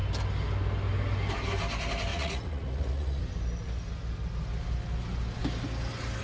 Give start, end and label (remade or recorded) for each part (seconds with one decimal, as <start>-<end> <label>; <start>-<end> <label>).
0.0-2.1 recorded; 2.1-3.2 remade; 3.2-6.2 recorded